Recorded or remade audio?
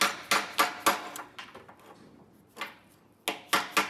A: recorded